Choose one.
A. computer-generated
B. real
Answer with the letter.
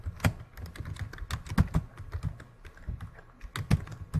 B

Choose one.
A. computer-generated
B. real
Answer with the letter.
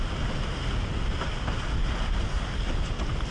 B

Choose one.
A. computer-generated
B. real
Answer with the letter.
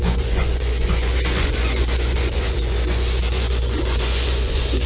A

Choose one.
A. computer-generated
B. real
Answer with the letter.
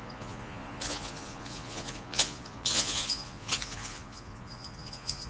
A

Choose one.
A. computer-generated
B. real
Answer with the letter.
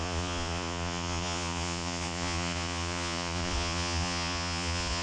A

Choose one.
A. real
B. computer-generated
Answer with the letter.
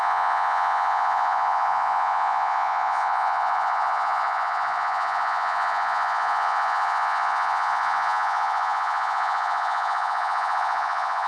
B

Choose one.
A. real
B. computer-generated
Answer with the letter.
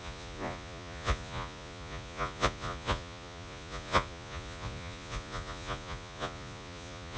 B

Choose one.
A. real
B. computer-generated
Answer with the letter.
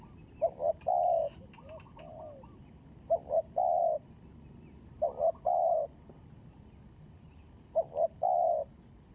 A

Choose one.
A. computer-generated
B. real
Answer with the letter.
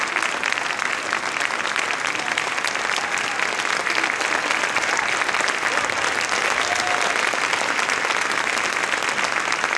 B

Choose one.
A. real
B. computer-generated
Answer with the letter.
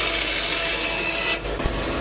A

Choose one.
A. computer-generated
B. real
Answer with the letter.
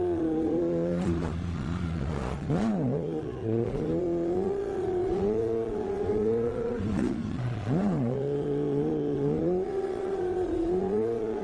A